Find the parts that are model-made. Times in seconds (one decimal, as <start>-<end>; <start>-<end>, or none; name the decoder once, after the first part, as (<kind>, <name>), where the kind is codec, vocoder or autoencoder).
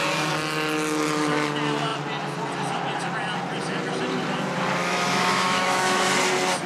4.8-6.1 (autoencoder, DAC-VAE)